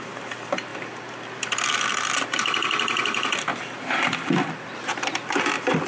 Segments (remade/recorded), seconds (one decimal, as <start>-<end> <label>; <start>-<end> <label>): 0.0-5.9 remade